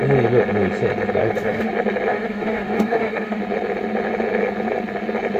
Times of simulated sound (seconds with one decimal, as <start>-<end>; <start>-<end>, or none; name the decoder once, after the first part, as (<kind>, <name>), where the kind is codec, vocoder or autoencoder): 1.2-1.7 (autoencoder, DAC-VAE); 2.1-3.4